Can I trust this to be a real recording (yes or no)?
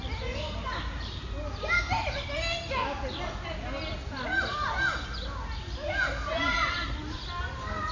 yes